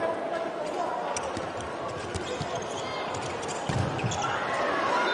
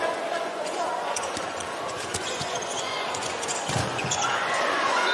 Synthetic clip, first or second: second